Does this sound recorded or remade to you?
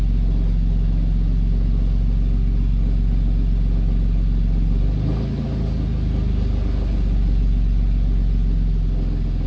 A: recorded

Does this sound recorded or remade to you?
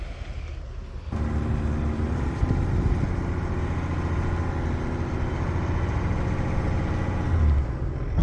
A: recorded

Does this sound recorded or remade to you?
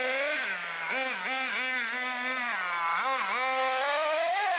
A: recorded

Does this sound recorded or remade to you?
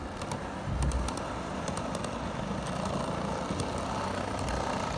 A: recorded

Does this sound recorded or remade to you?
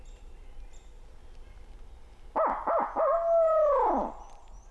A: recorded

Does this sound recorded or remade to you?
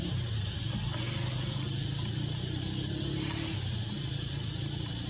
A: recorded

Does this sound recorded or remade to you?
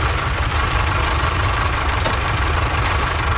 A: recorded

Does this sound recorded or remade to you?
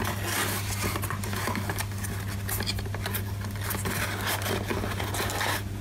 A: recorded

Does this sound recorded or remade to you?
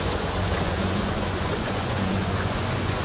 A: remade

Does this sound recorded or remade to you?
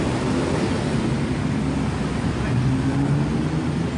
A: recorded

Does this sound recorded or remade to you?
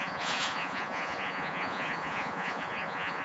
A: remade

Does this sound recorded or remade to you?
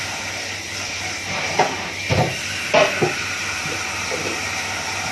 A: recorded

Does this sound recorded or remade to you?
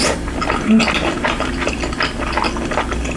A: recorded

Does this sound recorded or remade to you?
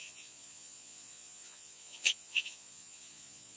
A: remade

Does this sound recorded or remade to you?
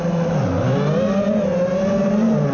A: recorded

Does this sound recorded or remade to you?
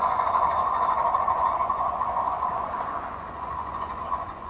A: remade